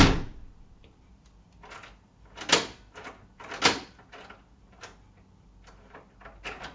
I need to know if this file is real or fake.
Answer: real